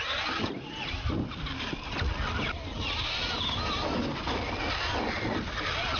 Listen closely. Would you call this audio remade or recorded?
recorded